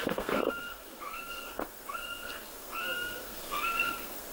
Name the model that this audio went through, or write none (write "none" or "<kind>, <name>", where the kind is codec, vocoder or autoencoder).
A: codec, SNAC